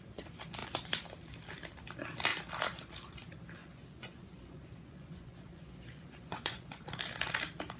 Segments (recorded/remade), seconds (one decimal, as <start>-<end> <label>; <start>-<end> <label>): 0.0-3.6 recorded; 3.6-6.8 remade; 6.8-7.8 recorded